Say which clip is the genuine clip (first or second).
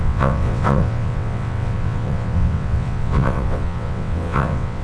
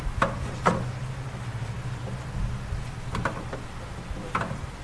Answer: second